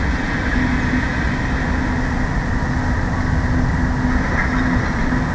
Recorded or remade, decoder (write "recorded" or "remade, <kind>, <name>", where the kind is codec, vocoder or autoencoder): recorded